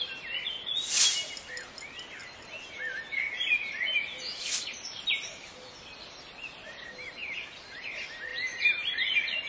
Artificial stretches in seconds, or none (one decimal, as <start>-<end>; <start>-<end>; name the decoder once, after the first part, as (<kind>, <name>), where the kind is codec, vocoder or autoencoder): 4.1-5.7 (vocoder, BigVGAN v2); 8.3-9.5